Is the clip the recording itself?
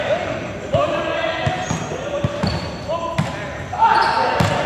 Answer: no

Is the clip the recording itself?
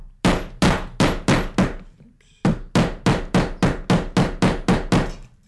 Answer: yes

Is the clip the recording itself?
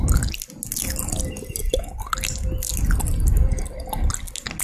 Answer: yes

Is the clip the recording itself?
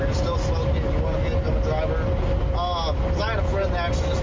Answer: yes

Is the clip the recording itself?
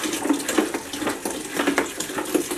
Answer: yes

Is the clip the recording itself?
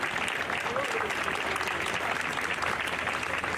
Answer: yes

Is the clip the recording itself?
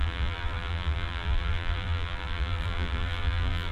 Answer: no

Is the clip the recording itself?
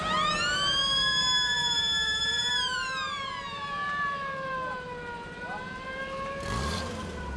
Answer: no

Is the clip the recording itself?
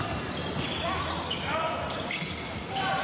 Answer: yes